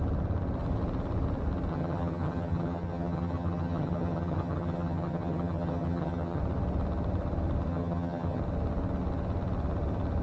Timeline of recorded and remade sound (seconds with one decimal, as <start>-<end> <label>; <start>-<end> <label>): 0.0-1.7 recorded; 1.7-6.4 remade; 6.4-7.7 recorded; 7.7-8.4 remade; 8.4-10.2 recorded